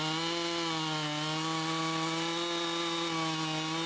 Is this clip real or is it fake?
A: real